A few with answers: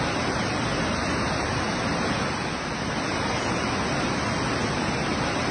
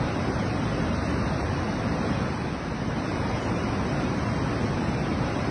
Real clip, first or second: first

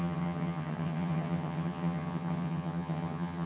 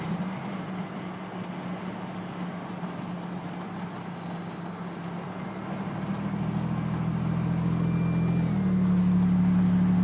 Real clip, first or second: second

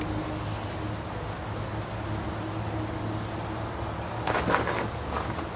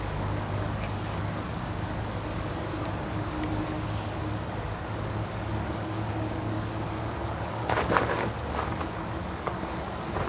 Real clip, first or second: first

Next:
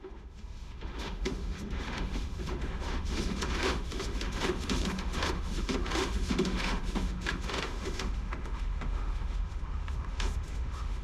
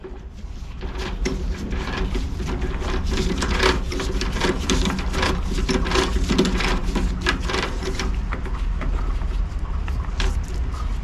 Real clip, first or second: second